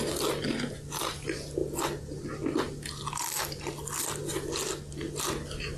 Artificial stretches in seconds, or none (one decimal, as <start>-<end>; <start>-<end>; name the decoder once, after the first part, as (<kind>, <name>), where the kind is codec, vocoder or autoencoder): none